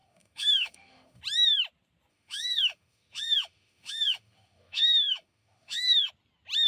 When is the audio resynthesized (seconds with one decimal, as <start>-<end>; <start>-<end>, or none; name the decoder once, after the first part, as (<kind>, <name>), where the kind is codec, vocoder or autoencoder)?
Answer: 0.0-1.2 (autoencoder, DAC-VAE); 2.1-6.1